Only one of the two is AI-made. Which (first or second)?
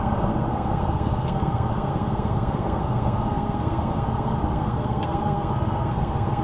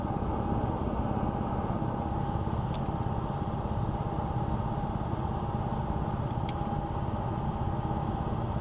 first